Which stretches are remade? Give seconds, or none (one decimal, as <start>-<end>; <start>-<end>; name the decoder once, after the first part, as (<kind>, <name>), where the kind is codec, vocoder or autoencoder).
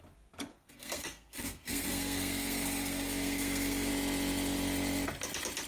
0.5-3.9 (codec, SNAC)